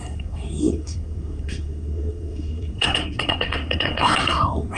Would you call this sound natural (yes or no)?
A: no